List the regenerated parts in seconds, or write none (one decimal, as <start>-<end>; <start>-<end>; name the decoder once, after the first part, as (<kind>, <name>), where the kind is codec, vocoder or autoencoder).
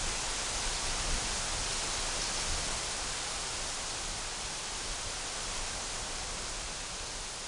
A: none